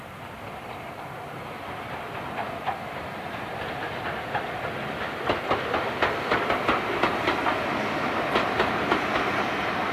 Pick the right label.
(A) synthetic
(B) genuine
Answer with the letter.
B